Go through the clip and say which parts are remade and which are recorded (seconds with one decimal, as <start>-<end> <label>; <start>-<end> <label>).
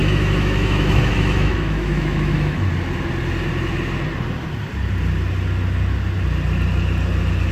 0.0-2.7 remade; 2.7-7.5 recorded